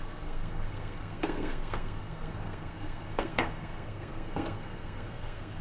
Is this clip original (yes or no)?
no